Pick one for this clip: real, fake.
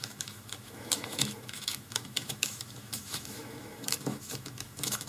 fake